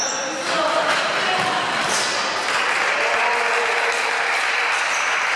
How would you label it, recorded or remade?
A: recorded